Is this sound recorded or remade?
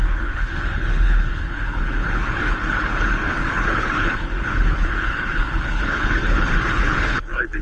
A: remade